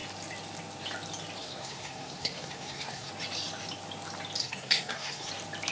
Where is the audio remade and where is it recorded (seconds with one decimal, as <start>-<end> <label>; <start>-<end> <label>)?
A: 0.0-1.4 recorded; 1.4-3.1 remade; 3.1-4.4 recorded; 4.4-5.3 remade; 5.3-5.7 recorded

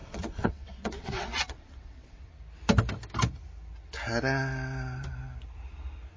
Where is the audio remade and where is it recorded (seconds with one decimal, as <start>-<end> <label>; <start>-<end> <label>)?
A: 0.0-2.3 remade; 2.3-6.2 recorded

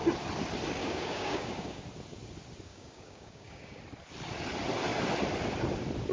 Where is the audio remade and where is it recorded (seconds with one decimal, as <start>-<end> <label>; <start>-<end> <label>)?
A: 0.0-0.8 recorded; 0.8-1.8 remade; 1.8-2.7 recorded; 2.7-3.8 remade; 3.8-6.1 recorded

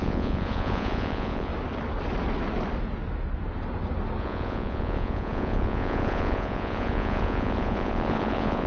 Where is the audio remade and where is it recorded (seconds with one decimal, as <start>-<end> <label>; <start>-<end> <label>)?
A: 0.0-1.5 remade; 1.5-4.2 recorded; 4.2-8.7 remade

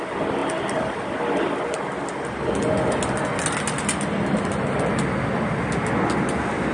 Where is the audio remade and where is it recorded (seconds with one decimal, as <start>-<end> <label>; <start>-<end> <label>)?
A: 0.0-6.7 recorded

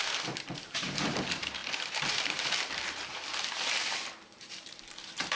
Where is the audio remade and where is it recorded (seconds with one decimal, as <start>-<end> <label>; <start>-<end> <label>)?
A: 0.0-5.4 remade

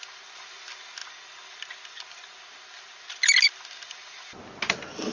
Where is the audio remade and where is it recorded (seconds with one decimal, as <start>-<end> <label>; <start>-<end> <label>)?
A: 0.0-5.1 recorded